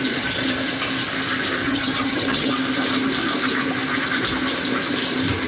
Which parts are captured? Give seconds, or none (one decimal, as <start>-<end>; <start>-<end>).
0.0-1.6; 2.5-5.5